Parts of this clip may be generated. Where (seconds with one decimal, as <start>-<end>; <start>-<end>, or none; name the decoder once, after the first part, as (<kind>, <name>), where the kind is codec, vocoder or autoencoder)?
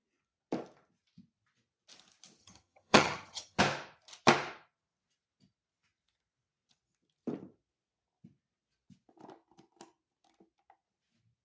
2.4-3.6 (vocoder, HiFi-GAN)